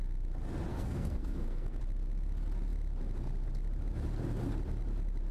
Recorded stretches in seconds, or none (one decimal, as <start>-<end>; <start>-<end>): 0.0-0.7; 1.8-5.3